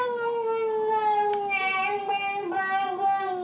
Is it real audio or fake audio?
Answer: real